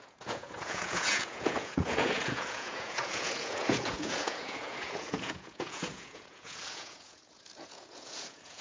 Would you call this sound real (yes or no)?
no